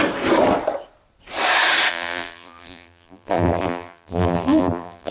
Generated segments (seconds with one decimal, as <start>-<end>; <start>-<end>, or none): 1.9-5.1